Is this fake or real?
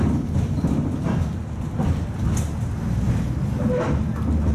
real